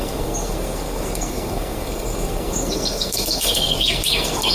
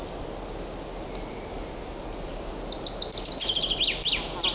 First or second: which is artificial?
first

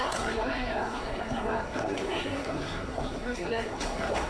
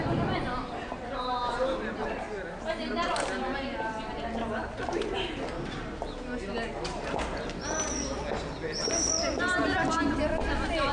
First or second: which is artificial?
first